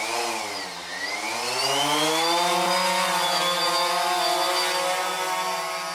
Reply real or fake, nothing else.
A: real